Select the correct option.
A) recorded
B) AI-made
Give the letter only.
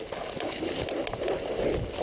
A